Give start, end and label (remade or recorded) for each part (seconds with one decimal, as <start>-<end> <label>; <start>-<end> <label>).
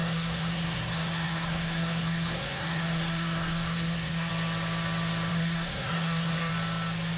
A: 0.0-4.3 remade; 4.3-5.3 recorded; 5.3-6.5 remade; 6.5-7.2 recorded